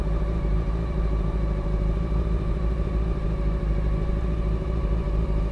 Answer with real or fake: fake